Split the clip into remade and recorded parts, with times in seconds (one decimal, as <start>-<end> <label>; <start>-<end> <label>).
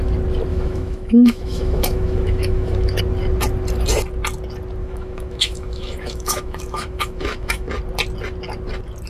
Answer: 0.0-0.5 recorded; 0.5-3.0 remade; 3.0-4.8 recorded; 4.8-7.7 remade; 7.7-9.1 recorded